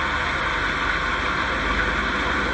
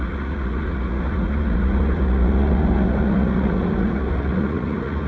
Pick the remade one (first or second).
second